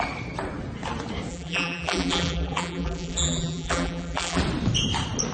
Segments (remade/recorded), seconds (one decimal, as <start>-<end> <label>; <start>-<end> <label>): 0.0-1.3 recorded; 1.3-4.4 remade; 4.4-5.3 recorded